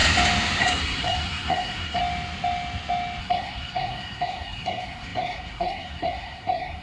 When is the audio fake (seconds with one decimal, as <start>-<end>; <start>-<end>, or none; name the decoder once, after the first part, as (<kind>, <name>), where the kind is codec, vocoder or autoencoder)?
0.6-2.0 (codec, SNAC); 3.2-6.8